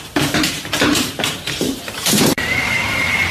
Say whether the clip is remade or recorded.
remade